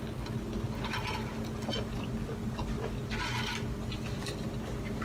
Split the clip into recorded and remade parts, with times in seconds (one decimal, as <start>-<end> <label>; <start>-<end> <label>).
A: 0.0-5.0 recorded